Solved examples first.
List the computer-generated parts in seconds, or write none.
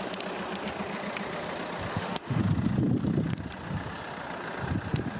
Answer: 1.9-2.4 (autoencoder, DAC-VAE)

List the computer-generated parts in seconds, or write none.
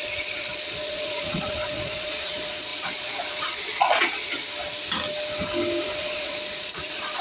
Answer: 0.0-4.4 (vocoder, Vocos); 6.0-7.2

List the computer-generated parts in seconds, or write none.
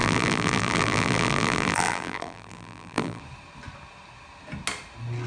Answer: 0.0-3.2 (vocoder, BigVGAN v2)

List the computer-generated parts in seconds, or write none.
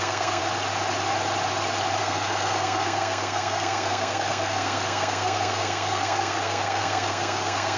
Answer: 0.0-0.4 (codec, SNAC); 2.0-7.8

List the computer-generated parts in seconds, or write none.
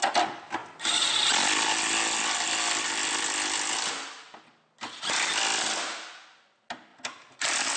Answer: none